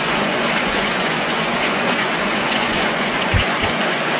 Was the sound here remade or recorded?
remade